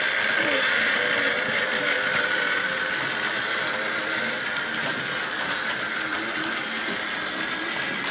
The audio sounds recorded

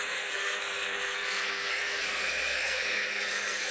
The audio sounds remade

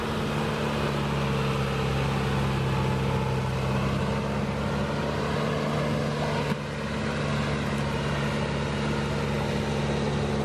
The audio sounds recorded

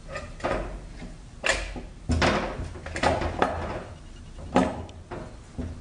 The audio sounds recorded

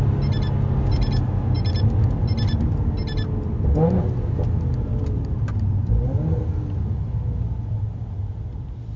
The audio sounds recorded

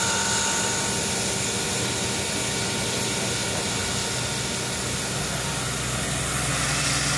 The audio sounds recorded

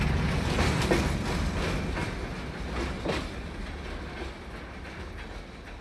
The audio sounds recorded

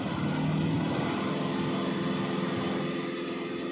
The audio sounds recorded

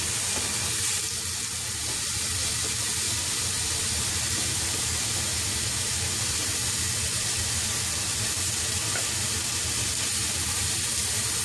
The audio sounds recorded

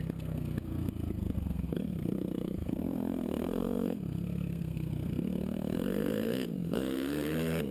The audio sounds remade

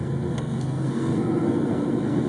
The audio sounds remade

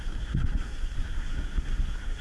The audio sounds remade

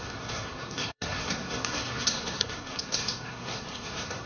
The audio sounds remade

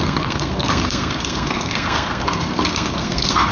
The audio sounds remade